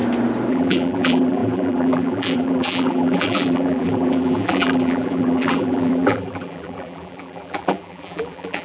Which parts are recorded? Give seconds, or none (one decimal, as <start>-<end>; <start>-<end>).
0.0-0.5

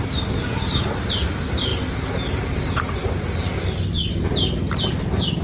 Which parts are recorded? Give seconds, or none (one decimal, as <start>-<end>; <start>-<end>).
0.0-5.4